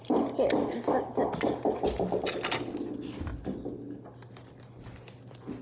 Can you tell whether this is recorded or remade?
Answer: recorded